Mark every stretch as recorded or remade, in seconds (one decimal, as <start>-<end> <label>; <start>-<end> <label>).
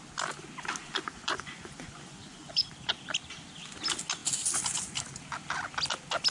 0.0-0.8 recorded; 0.8-2.7 remade; 2.7-6.3 recorded